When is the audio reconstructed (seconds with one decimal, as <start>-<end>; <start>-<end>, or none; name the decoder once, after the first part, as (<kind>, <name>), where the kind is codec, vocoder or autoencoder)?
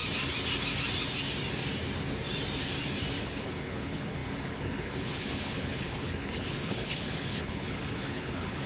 3.2-8.7 (codec, HILCodec)